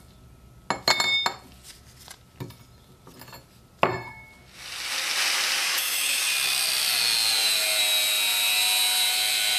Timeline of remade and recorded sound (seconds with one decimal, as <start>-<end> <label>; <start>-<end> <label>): 0.0-5.6 recorded; 5.6-6.2 remade; 6.2-9.6 recorded